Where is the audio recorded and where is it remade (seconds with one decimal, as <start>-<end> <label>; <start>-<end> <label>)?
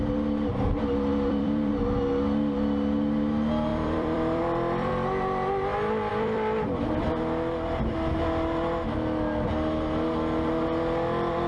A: 0.0-1.1 recorded; 1.1-1.7 remade; 1.7-3.7 recorded; 3.7-4.9 remade; 4.9-6.1 recorded; 6.1-6.8 remade; 6.8-11.5 recorded